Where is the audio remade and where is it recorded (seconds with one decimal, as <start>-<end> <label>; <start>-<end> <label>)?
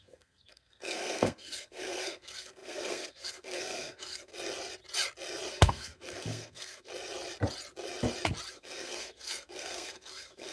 0.0-4.3 remade; 4.3-5.5 recorded; 5.5-6.9 remade; 6.9-8.5 recorded; 8.5-10.5 remade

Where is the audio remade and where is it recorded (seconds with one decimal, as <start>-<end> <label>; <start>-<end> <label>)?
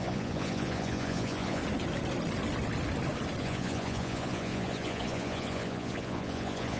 0.0-1.6 remade; 1.6-3.4 recorded; 3.4-6.8 remade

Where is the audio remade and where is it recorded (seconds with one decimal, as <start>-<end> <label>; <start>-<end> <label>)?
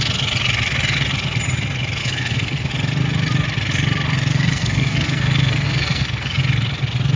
0.0-2.0 recorded; 2.0-2.7 remade; 2.7-4.3 recorded; 4.3-6.4 remade; 6.4-7.2 recorded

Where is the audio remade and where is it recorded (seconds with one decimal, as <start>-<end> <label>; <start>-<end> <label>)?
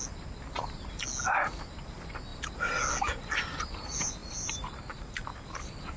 0.0-4.2 recorded; 4.2-5.1 remade; 5.1-6.0 recorded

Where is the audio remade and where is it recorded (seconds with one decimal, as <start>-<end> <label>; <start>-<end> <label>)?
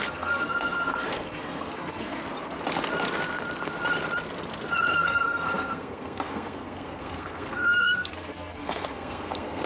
0.0-2.2 remade; 2.2-4.9 recorded; 4.9-9.7 remade